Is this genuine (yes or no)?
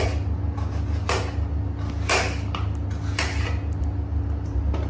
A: yes